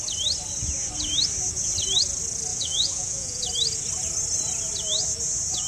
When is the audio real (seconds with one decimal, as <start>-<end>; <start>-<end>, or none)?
0.0-2.5; 3.4-5.7